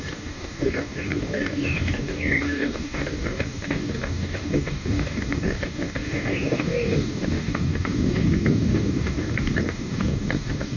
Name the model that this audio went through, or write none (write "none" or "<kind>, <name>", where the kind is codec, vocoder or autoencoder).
codec, DAC